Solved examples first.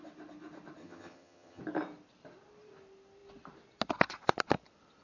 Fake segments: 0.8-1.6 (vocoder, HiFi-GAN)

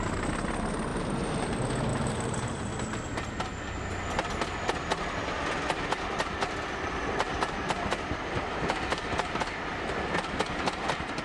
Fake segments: 0.9-1.5 (vocoder, BigVGAN v2); 1.9-2.6

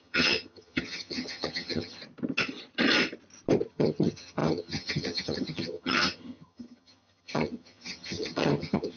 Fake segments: 0.0-2.0 (vocoder, HiFi-GAN); 3.7-9.0

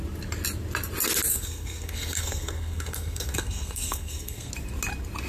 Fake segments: 1.3-4.5 (codec, SNAC)

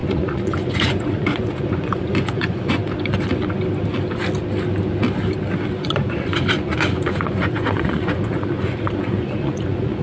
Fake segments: 0.0-2.8 (vocoder, Vocos); 5.8-10.0